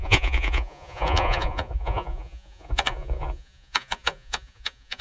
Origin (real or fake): fake